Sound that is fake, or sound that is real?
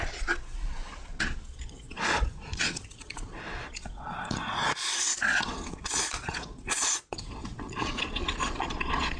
fake